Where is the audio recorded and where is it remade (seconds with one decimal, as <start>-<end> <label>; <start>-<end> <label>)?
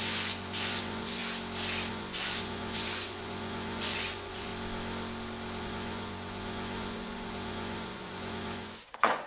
0.0-1.2 remade; 1.2-1.9 recorded; 1.9-4.5 remade; 4.5-5.6 recorded; 5.6-9.3 remade